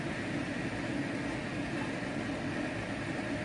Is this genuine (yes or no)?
yes